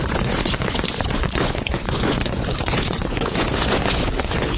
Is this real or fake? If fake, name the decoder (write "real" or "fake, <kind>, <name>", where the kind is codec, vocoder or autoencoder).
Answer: fake, vocoder, Vocos